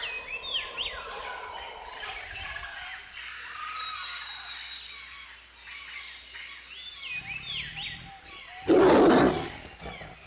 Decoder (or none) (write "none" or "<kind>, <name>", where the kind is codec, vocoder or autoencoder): none